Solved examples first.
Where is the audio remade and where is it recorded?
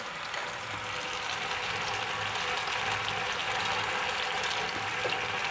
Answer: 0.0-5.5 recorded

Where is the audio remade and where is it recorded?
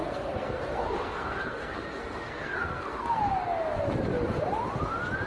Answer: 0.0-3.2 remade; 3.2-5.3 recorded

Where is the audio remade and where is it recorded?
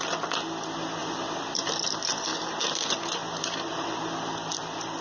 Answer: 0.0-1.0 recorded; 1.0-1.8 remade; 1.8-2.3 recorded; 2.3-4.0 remade; 4.0-5.0 recorded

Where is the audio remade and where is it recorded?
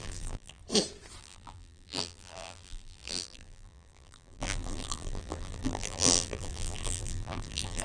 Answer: 0.0-0.6 remade; 0.6-1.2 recorded; 1.2-7.8 remade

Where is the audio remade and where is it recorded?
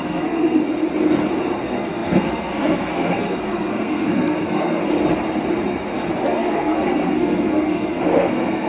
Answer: 0.0-0.6 remade; 0.6-1.6 recorded; 1.6-4.8 remade; 4.8-6.2 recorded; 6.2-8.7 remade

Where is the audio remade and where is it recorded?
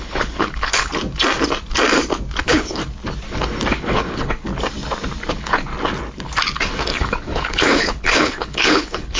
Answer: 0.0-0.9 remade; 0.9-2.4 recorded; 2.4-2.8 remade; 2.8-3.7 recorded; 3.7-4.5 remade; 4.5-5.3 recorded; 5.3-5.7 remade; 5.7-7.0 recorded; 7.0-9.2 remade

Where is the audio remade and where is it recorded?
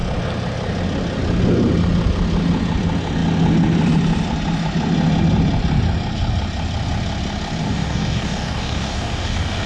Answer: 0.0-7.6 recorded; 7.6-9.7 remade